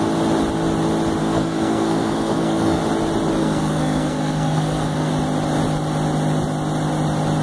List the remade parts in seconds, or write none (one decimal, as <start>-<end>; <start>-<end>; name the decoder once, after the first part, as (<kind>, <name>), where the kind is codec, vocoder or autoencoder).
1.2-2.8 (codec, SNAC); 3.4-5.1